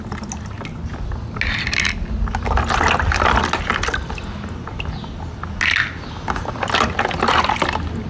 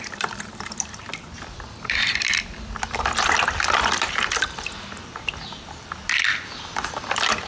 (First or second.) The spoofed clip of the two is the second